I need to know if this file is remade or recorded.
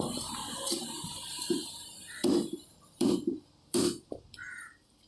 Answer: remade